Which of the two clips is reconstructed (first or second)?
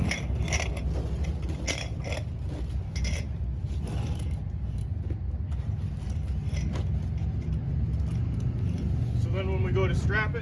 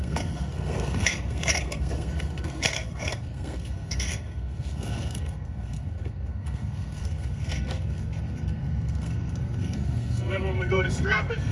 second